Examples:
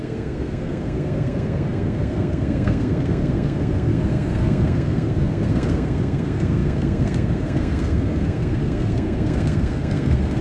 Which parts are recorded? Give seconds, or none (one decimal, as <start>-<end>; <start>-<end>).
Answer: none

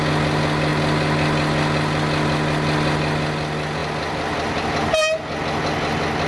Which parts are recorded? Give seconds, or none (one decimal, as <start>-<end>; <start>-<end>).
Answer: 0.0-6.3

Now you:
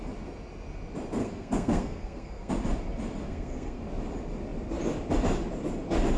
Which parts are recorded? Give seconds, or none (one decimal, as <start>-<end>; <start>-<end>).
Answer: 0.0-1.2; 2.5-3.3; 3.8-6.2

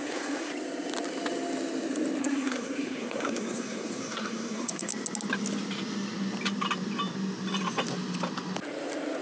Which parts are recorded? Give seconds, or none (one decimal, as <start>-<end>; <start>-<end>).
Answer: 0.5-2.2; 4.9-9.2